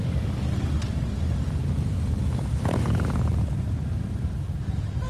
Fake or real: real